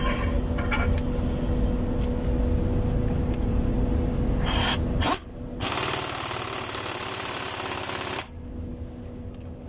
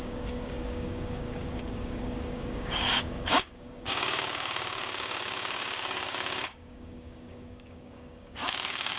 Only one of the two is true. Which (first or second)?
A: first